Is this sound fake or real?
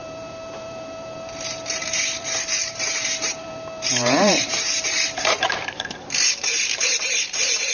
fake